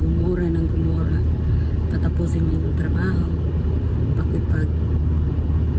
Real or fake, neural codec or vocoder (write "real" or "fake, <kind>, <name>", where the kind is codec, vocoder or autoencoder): real